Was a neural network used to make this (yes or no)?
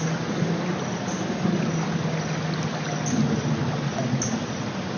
no